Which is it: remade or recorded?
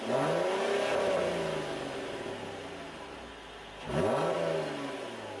recorded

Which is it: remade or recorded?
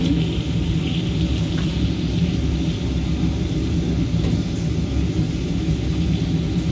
recorded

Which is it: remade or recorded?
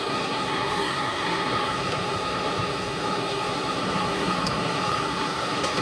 remade